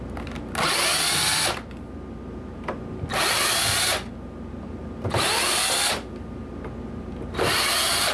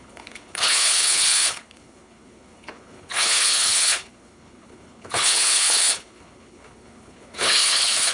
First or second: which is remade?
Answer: second